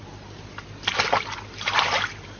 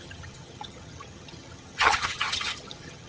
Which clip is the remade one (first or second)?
second